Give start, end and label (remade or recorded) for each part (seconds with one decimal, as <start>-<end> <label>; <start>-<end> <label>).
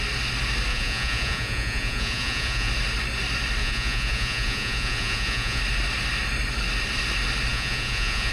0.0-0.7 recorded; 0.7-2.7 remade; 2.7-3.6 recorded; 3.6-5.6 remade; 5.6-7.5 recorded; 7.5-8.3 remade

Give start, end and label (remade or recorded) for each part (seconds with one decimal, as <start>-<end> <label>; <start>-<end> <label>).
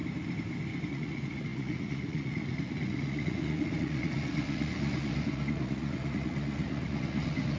0.0-0.9 recorded; 0.9-7.6 remade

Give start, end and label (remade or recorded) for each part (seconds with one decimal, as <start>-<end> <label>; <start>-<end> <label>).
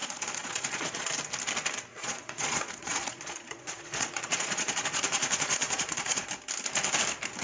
0.0-1.1 remade; 1.1-1.9 recorded; 1.9-6.3 remade; 6.3-7.4 recorded